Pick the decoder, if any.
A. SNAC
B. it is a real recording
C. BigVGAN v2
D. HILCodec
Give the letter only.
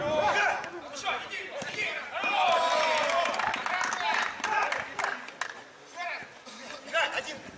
B